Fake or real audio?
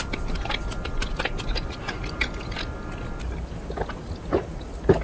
real